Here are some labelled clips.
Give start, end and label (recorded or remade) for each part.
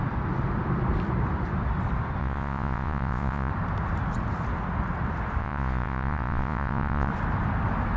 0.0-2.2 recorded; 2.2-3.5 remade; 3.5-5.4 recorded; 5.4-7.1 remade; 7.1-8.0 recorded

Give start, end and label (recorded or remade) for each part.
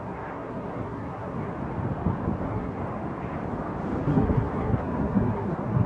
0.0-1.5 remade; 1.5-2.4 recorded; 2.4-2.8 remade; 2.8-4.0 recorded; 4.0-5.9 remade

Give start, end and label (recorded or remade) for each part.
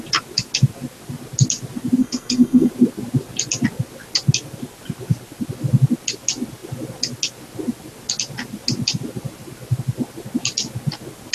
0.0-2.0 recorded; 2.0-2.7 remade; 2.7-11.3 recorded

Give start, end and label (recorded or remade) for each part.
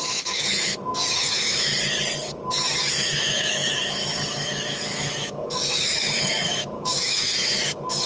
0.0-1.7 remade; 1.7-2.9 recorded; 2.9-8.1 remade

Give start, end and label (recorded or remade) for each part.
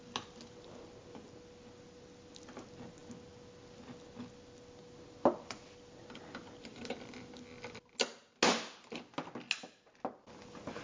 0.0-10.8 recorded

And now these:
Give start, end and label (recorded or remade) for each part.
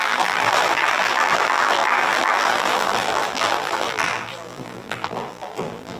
0.0-6.0 remade